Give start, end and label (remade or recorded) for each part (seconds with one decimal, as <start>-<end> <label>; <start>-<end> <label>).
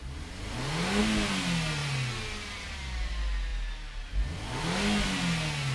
0.0-5.7 recorded